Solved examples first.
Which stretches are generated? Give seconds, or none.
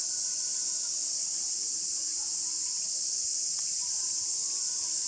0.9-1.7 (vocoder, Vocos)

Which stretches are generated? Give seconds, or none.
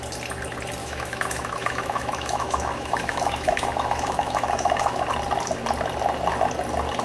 0.8-5.0 (autoencoder, DAC-VAE)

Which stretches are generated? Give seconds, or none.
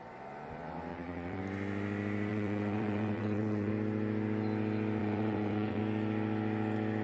0.9-1.4 (vocoder, WaveNeXt); 2.3-3.7; 5.0-5.8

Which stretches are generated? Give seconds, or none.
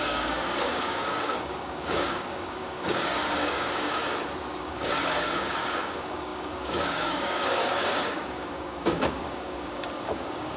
0.0-4.0 (codec, DAC); 4.6-10.6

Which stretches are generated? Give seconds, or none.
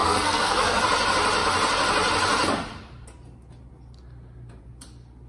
0.0-0.8 (codec, SNAC)